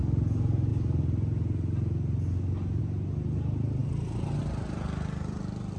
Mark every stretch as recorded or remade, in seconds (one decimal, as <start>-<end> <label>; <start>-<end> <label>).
0.0-5.8 recorded